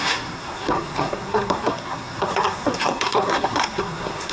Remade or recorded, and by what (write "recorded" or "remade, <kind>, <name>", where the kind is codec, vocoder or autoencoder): remade, codec, SNAC